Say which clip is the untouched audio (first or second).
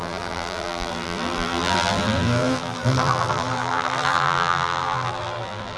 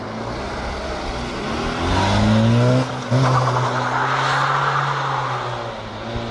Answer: second